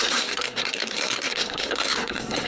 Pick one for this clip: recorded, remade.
remade